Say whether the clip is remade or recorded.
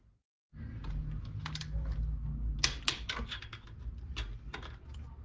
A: recorded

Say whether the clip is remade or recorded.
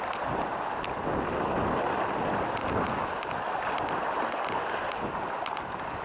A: recorded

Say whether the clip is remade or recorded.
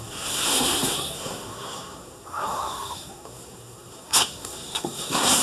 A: remade